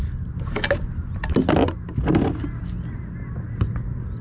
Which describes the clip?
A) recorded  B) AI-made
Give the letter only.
A